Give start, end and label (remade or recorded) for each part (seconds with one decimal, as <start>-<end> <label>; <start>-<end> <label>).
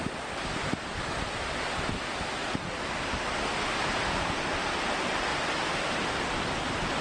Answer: 0.0-5.3 recorded; 5.3-5.8 remade; 5.8-7.0 recorded